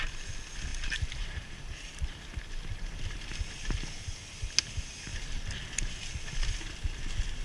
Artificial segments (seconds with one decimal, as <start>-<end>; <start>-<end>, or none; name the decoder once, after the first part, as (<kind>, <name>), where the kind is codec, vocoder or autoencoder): 0.7-1.9 (vocoder, BigVGAN v2)